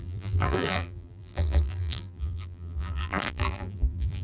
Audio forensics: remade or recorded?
remade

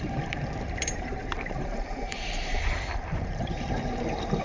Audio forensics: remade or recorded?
remade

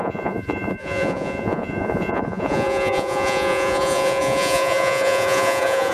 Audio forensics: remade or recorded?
remade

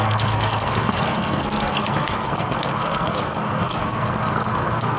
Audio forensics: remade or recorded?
remade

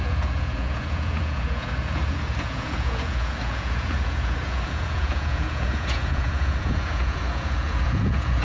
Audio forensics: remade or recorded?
remade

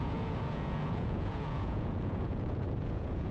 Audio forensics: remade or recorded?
remade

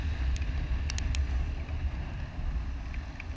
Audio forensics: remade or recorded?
recorded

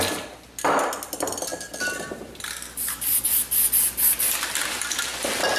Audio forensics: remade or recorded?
recorded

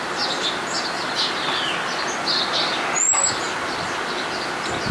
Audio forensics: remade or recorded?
recorded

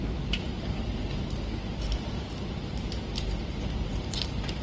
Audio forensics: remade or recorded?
recorded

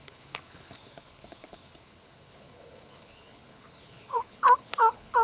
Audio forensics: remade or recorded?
remade